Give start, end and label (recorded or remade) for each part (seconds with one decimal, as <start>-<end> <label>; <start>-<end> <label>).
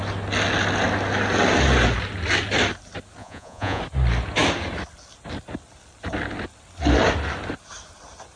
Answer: 0.0-3.2 recorded; 3.2-3.8 remade; 3.8-8.4 recorded